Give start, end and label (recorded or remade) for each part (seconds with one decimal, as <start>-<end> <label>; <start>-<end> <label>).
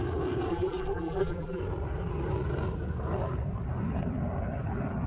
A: 0.0-0.5 recorded; 0.5-1.6 remade; 1.6-5.1 recorded